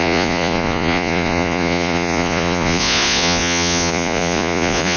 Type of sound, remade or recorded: remade